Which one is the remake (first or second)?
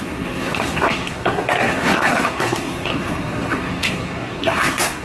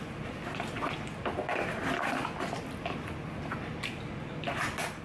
first